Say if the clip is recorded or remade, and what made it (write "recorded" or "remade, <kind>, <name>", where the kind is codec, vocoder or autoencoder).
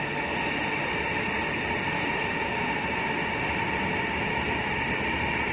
recorded